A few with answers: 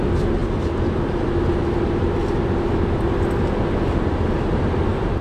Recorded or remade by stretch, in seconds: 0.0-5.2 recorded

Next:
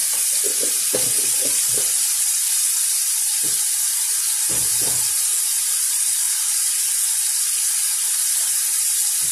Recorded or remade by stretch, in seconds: 0.0-9.3 remade

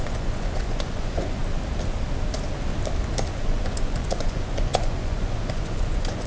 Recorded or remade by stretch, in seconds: 0.0-1.4 remade; 1.4-3.3 recorded; 3.3-6.3 remade